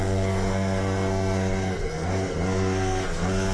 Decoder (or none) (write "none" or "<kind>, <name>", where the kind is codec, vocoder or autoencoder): codec, SNAC